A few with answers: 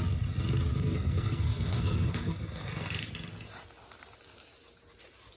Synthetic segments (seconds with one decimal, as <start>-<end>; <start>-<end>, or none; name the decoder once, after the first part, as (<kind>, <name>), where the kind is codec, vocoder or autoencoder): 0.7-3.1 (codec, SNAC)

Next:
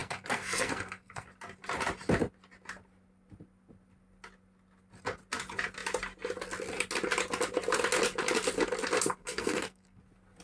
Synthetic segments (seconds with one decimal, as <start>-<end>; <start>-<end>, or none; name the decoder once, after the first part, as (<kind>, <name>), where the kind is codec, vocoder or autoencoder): 0.0-1.3 (codec, SNAC); 9.2-10.0

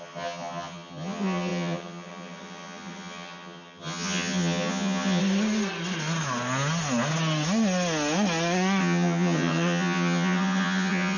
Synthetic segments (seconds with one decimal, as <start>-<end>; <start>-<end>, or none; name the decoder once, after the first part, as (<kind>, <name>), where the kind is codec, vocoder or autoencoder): 0.0-5.2 (vocoder, HiFi-GAN); 8.8-11.2